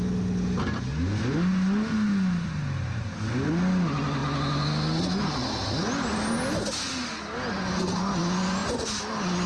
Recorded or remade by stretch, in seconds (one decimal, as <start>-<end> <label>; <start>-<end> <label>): 0.0-9.5 recorded